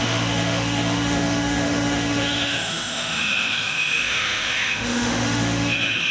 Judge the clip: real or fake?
fake